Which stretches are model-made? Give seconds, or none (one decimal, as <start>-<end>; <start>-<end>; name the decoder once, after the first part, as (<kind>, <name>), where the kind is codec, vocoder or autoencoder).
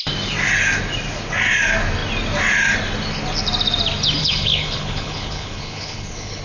4.2-6.4 (codec, HILCodec)